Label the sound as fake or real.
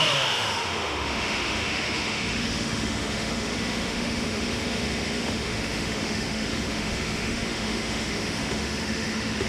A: fake